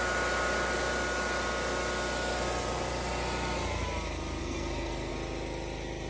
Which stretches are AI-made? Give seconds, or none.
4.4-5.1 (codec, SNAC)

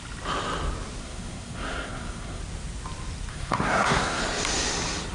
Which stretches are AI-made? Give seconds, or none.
1.0-2.4 (codec, SNAC); 3.3-4.2

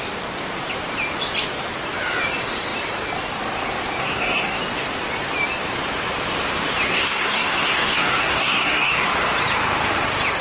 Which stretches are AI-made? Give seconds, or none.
4.0-4.6 (codec, SNAC); 6.9-8.9

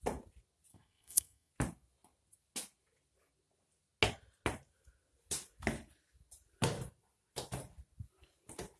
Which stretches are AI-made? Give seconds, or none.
0.7-1.5 (codec, SNAC)

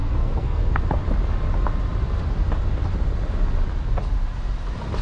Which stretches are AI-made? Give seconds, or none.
0.0-0.8 (codec, SNAC)

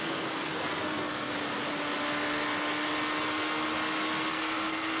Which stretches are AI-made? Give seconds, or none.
0.0-1.3 (codec, SNAC); 4.3-5.0

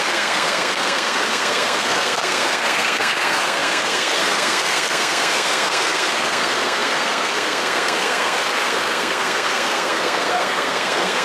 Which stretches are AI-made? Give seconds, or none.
0.0-11.2 (codec, SNAC)

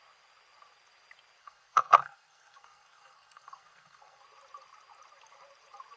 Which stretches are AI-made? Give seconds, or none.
1.4-4.2 (codec, SNAC)